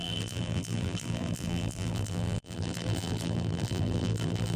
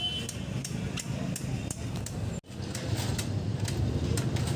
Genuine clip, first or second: second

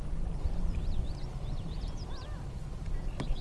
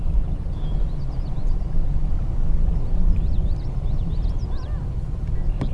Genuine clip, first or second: second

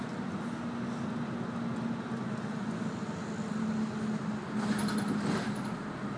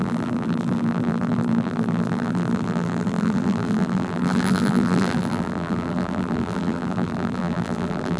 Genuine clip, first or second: first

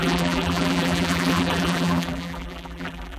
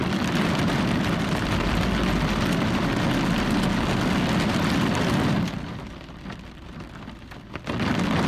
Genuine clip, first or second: second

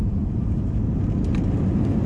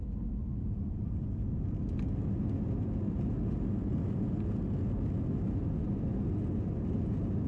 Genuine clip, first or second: second